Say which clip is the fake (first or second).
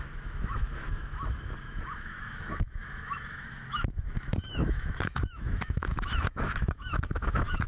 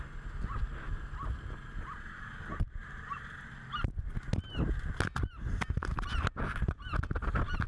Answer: first